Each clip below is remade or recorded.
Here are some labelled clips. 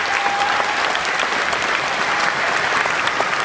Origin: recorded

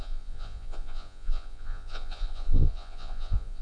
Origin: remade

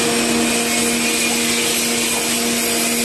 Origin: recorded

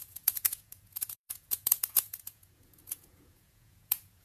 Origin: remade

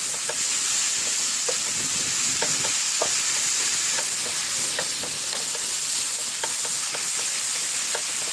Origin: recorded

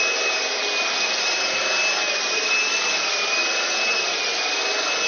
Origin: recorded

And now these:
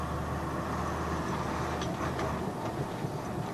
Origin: recorded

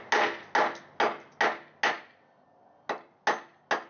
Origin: recorded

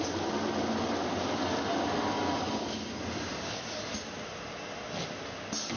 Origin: recorded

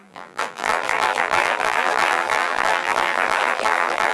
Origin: remade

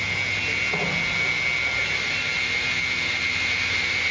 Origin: recorded